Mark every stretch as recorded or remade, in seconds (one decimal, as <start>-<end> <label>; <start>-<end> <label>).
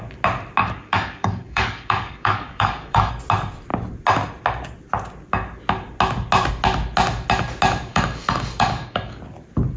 0.0-0.6 recorded; 0.6-3.1 remade; 3.1-7.9 recorded; 7.9-9.2 remade; 9.2-9.8 recorded